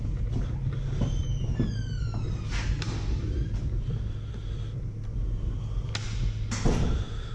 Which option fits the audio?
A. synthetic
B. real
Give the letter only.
B